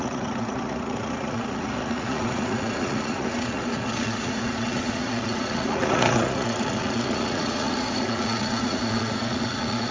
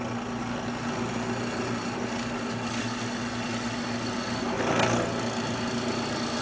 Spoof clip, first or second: first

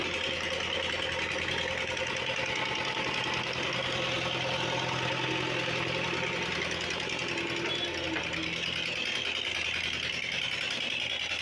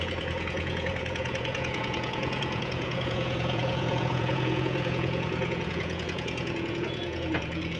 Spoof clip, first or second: second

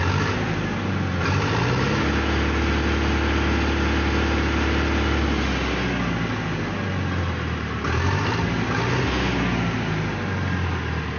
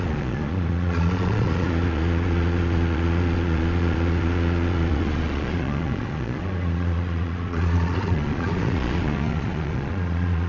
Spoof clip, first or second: second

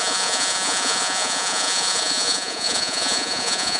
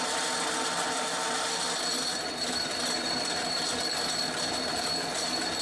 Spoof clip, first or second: first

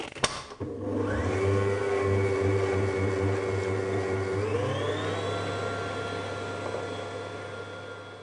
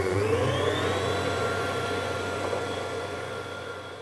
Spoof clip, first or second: second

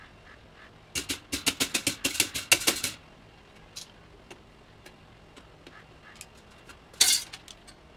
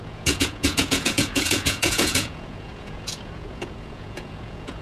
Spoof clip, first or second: second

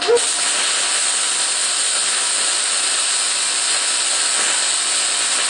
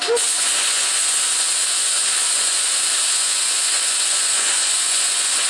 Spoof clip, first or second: second